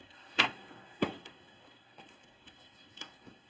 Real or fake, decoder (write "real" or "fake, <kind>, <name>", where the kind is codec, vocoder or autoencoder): fake, codec, SNAC